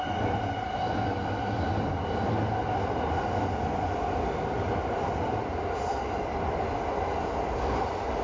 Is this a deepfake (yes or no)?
no